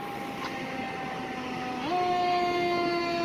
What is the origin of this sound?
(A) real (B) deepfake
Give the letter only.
A